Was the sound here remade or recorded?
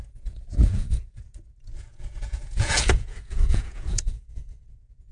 remade